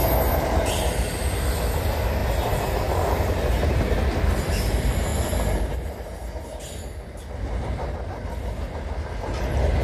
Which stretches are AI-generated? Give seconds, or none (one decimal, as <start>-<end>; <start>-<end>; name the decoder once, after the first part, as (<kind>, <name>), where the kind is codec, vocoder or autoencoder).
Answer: 0.0-0.7 (vocoder, BigVGAN v2); 5.1-5.9